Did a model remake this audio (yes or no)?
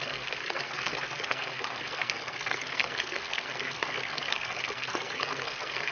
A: yes